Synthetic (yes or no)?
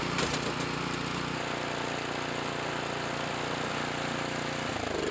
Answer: no